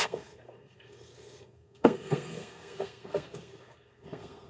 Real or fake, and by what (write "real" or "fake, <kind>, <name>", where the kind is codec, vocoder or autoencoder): fake, codec, SNAC